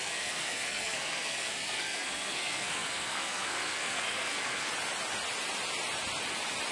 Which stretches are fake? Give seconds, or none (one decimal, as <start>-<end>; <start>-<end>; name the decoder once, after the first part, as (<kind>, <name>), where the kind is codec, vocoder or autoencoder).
0.0-4.7 (codec, SNAC)